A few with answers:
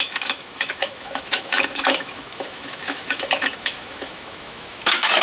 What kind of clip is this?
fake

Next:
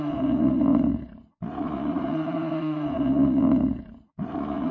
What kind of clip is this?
fake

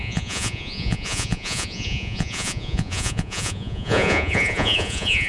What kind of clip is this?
fake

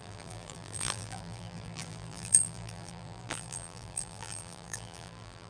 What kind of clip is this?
fake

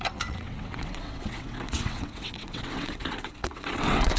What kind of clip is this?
fake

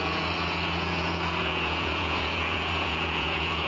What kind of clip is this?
fake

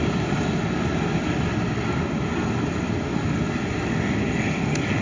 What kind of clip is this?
real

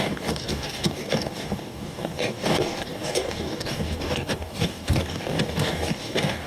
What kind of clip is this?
fake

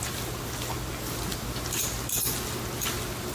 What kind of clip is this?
real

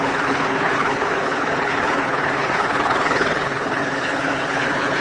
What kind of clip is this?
fake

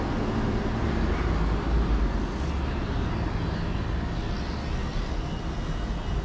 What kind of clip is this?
real